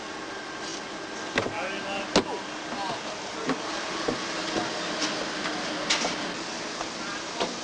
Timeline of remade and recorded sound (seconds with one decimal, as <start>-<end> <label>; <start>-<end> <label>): 0.0-7.6 recorded